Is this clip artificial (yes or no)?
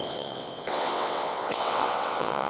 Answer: yes